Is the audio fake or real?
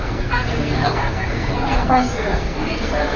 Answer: fake